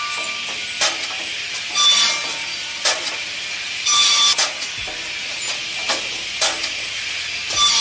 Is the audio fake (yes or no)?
no